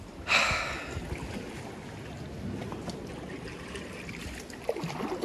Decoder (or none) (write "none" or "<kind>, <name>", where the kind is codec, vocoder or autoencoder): none